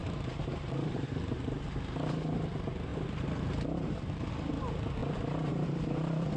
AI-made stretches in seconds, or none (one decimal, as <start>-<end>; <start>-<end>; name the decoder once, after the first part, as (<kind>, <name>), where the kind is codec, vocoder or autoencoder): 0.0-1.2 (vocoder, BigVGAN v2); 2.9-4.3; 5.0-5.5